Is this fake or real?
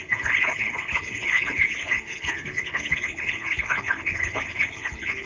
fake